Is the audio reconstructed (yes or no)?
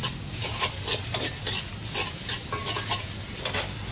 no